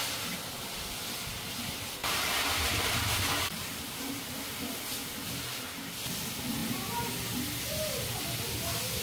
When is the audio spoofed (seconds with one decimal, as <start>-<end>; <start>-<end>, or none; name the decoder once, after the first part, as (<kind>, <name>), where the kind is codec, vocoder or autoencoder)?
2.0-4.8 (vocoder, BigVGAN v2)

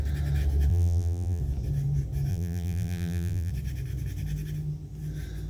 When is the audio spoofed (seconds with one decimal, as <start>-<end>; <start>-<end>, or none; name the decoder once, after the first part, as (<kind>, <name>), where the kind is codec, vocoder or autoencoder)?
0.7-1.4 (vocoder, BigVGAN v2); 2.3-3.5

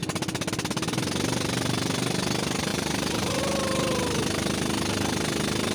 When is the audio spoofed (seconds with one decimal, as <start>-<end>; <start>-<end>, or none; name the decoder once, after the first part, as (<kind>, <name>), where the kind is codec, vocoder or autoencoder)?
2.7-3.4 (vocoder, BigVGAN v2)

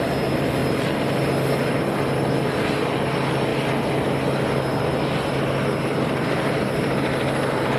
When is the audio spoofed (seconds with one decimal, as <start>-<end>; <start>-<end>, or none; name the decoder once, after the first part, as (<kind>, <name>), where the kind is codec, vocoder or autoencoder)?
none

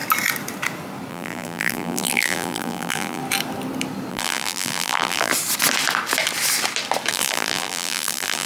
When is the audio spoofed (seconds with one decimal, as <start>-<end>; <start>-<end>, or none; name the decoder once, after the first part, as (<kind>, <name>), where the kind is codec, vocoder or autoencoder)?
1.1-3.2 (vocoder, BigVGAN v2); 4.1-5.3; 7.1-8.5

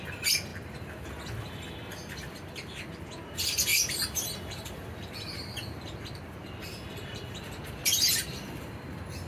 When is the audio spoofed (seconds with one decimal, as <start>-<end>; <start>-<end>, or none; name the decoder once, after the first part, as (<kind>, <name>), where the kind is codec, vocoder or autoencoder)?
3.7-8.7 (vocoder, BigVGAN v2)

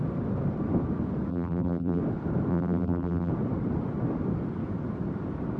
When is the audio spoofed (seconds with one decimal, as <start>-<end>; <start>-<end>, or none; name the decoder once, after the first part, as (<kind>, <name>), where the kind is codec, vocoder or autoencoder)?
1.3-2.0 (vocoder, BigVGAN v2); 2.5-3.3

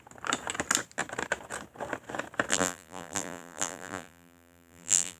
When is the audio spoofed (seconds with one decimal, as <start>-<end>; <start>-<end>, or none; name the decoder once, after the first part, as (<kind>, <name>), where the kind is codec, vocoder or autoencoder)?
2.5-5.2 (vocoder, BigVGAN v2)